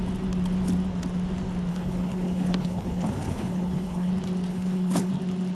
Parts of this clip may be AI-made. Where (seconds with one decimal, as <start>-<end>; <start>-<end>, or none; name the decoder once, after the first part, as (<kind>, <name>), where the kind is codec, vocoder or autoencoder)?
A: 1.7-4.1 (codec, HILCodec); 4.5-5.1